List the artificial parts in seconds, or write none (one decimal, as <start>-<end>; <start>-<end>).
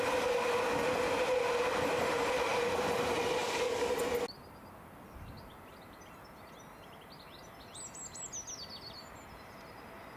3.4-3.9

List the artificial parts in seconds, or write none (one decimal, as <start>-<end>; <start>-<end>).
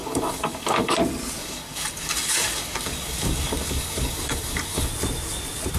0.0-0.9; 1.4-4.9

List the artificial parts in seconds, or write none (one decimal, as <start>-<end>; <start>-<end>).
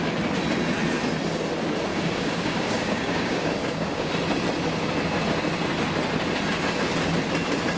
1.9-4.1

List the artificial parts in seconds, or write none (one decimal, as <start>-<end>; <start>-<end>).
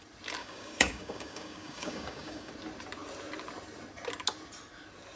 0.4-2.5